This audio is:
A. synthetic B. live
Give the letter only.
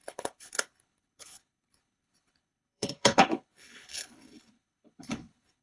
A